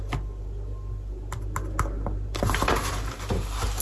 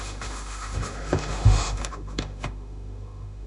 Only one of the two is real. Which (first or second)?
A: first